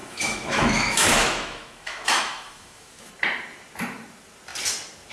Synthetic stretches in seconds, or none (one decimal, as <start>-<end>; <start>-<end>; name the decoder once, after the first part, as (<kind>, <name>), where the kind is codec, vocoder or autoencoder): 0.0-3.1 (autoencoder, DAC-VAE)